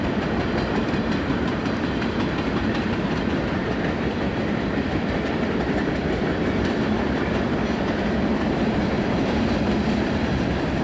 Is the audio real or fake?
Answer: fake